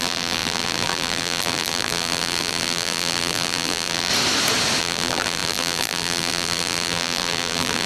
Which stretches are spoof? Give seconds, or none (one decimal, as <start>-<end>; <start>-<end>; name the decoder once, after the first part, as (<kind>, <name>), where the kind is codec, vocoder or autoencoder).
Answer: 0.0-4.1 (vocoder, BigVGAN v2); 4.8-7.9